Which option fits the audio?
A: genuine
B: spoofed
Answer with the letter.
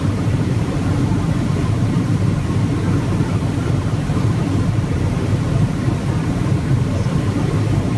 B